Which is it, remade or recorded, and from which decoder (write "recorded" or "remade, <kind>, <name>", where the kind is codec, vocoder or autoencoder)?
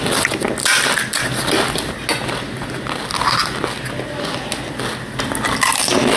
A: recorded